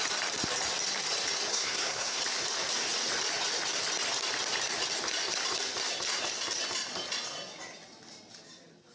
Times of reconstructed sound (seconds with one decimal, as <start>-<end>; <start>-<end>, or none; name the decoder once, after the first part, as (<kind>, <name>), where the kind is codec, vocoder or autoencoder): 1.5-2.2 (codec, SNAC)